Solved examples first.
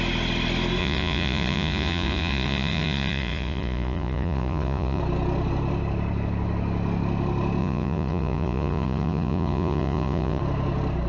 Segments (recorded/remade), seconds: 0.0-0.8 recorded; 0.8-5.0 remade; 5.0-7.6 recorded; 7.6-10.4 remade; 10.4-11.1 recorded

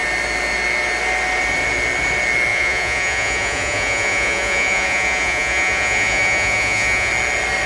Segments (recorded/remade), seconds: 0.0-2.5 recorded; 2.5-7.1 remade; 7.1-7.7 recorded

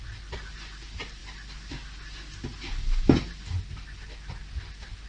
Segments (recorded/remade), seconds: 0.0-5.1 recorded

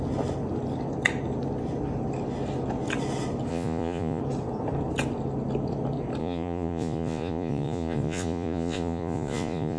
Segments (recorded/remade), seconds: 0.0-3.5 recorded; 3.5-4.2 remade; 4.2-6.2 recorded; 6.2-9.8 remade